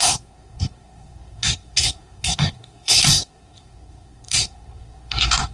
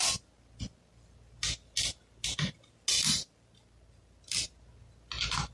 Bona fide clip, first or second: second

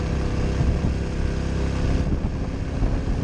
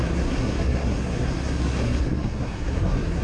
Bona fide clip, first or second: first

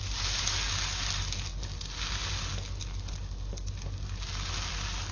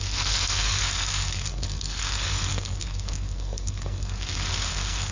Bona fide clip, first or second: first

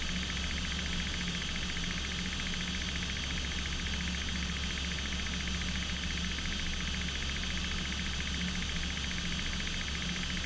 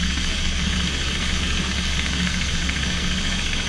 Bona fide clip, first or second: first